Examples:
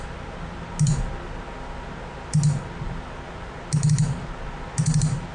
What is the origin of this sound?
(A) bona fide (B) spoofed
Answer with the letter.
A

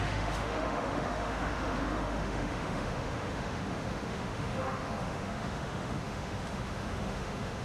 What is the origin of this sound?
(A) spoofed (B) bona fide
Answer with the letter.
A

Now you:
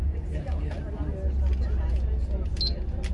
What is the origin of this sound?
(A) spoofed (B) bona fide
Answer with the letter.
B